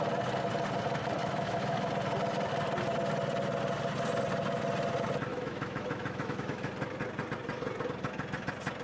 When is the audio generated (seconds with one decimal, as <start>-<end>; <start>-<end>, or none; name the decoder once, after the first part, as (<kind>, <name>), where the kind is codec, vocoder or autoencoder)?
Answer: 1.2-1.9 (autoencoder, DAC-VAE); 5.3-6.7